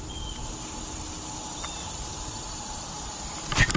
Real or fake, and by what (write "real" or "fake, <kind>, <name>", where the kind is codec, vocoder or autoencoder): real